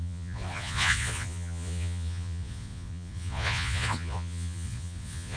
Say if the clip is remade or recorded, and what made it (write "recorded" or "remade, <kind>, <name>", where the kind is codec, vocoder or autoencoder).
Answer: remade, vocoder, Vocos